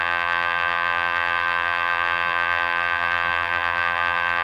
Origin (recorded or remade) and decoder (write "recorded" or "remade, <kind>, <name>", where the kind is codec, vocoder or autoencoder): remade, vocoder, BigVGAN v2